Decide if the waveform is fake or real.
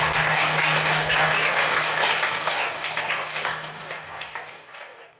fake